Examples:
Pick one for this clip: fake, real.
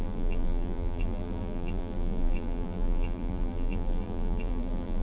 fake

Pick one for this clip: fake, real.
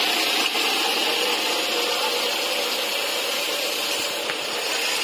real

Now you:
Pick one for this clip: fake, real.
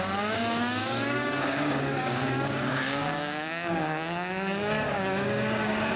fake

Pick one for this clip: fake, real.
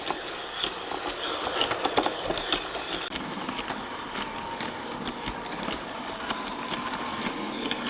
real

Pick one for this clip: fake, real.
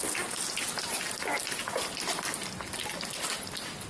real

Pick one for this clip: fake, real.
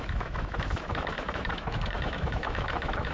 fake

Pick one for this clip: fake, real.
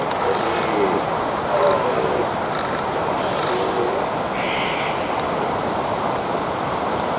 real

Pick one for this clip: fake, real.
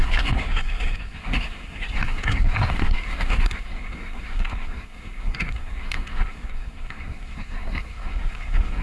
fake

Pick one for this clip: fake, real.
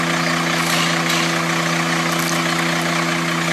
real